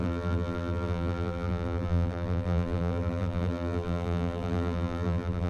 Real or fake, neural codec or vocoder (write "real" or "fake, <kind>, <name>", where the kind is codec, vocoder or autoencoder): fake, vocoder, BigVGAN v2